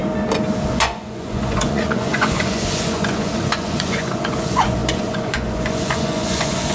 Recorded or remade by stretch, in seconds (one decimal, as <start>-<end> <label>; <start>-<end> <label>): 0.0-0.7 recorded; 0.7-6.7 remade